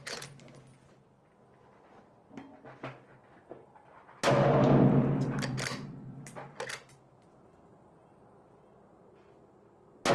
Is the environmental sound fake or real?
real